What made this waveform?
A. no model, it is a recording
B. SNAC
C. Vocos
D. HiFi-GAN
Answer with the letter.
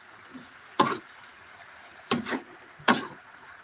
C